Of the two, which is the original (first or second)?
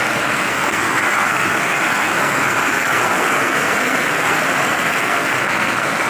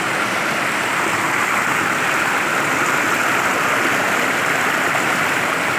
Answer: second